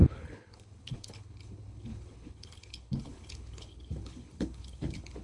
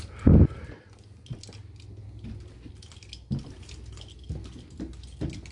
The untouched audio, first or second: second